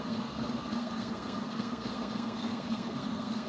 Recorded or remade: remade